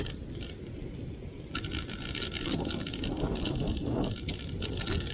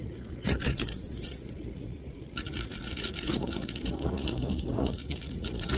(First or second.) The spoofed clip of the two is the second